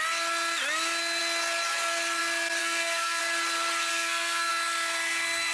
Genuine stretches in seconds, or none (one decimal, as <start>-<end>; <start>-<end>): 0.0-2.6; 3.2-3.9; 4.5-5.5